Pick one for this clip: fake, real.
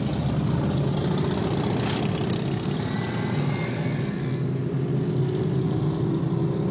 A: real